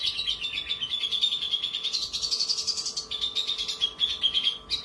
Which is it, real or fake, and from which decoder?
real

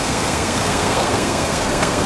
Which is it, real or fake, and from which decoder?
fake, codec, SNAC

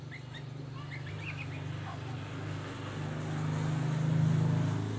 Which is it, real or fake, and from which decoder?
real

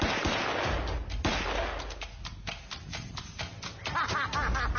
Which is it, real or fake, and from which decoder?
real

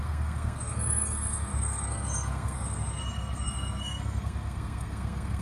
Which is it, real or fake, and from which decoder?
fake, codec, SNAC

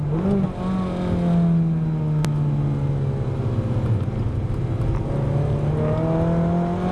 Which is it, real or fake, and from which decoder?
real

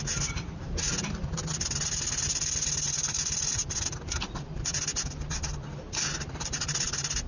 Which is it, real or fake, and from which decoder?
real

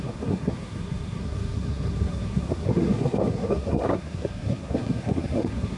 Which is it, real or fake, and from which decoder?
fake, codec, SNAC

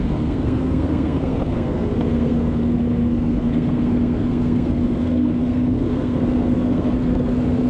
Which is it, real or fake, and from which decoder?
fake, codec, SNAC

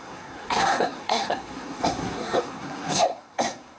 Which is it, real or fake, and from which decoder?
fake, codec, SNAC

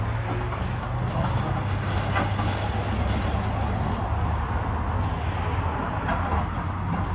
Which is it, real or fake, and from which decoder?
real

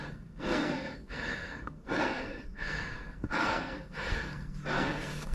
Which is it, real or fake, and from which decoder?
fake, codec, SNAC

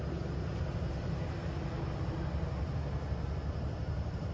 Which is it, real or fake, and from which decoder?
real